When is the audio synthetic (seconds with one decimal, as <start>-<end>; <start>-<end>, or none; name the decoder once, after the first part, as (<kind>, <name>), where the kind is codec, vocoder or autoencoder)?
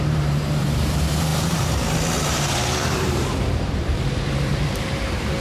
0.0-5.4 (vocoder, BigVGAN v2)